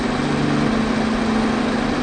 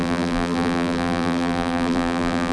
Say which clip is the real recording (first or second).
first